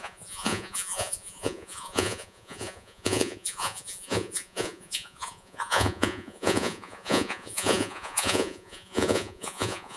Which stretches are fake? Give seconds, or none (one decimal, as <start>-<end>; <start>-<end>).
0.0-10.0